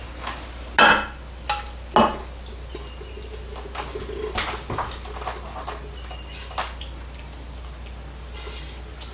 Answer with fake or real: real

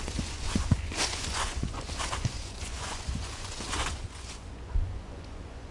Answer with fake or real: fake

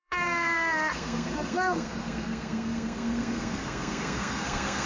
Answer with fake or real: fake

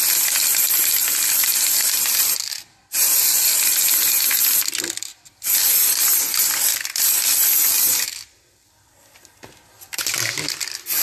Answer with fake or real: real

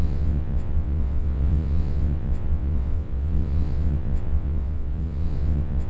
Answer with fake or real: fake